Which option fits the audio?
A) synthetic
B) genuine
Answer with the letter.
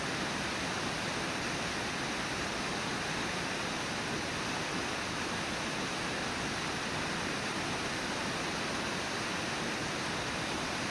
A